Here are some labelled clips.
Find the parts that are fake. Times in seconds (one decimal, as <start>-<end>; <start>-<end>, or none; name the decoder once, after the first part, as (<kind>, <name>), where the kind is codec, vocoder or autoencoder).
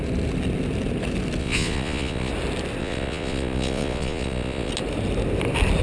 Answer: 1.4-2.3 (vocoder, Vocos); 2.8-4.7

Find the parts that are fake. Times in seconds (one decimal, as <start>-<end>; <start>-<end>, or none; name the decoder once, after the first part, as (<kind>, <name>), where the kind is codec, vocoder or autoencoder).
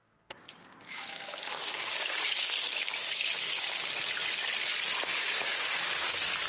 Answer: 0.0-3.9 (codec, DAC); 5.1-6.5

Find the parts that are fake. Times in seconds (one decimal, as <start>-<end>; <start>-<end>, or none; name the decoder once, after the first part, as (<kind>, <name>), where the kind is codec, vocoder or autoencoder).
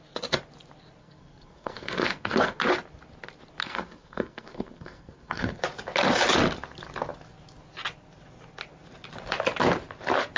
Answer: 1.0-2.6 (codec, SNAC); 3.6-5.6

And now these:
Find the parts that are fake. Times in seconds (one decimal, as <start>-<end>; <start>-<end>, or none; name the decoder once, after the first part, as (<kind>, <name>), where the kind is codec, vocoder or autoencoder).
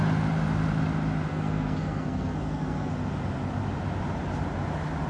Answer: 1.3-2.9 (codec, SNAC)